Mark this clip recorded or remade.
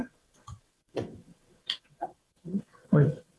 remade